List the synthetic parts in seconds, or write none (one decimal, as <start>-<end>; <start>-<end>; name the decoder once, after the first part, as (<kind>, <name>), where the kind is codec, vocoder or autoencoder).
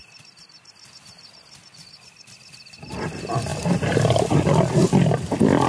3.5-4.5 (vocoder, BigVGAN v2)